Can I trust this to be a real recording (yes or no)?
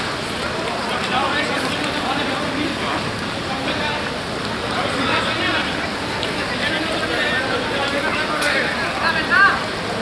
yes